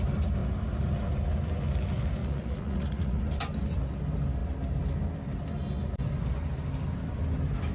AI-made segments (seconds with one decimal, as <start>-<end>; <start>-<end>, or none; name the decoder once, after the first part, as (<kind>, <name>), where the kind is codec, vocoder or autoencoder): 2.2-3.2 (vocoder, Vocos)